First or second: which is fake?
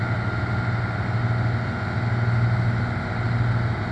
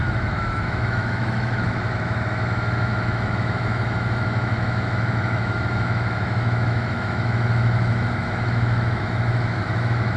second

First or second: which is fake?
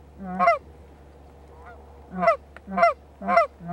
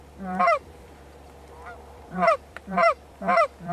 second